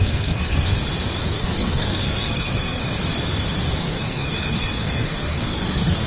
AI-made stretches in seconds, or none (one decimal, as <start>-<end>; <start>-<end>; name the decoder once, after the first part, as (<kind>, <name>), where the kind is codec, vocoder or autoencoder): 0.0-0.7 (codec, SNAC); 1.3-2.8; 3.8-6.1